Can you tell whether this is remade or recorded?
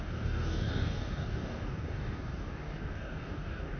remade